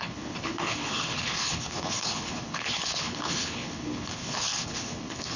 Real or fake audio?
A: fake